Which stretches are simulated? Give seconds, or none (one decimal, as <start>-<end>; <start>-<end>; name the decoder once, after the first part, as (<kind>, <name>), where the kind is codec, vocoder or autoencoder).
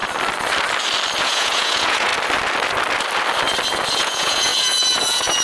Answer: 1.2-2.1 (vocoder, Vocos); 3.9-5.4